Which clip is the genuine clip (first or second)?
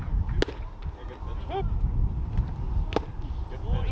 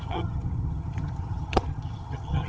first